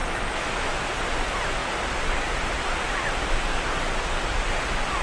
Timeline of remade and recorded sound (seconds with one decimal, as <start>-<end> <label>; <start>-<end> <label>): 0.0-0.7 remade; 0.7-5.0 recorded